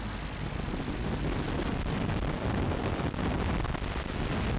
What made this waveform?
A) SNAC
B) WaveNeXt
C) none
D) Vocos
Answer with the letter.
C